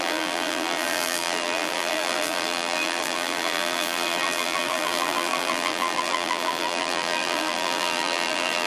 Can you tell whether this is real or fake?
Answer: fake